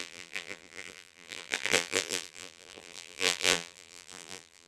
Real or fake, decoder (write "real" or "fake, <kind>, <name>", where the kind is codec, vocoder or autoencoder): fake, vocoder, BigVGAN v2